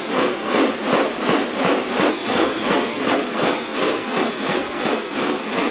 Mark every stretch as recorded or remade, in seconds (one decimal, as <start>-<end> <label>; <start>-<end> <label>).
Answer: 0.0-0.6 remade; 0.6-2.1 recorded; 2.1-5.7 remade